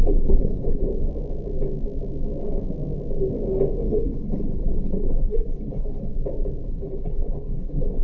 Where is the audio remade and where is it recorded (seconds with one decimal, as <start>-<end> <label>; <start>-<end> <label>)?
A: 0.0-0.9 remade; 0.9-3.9 recorded; 3.9-6.1 remade; 6.1-6.7 recorded; 6.7-8.0 remade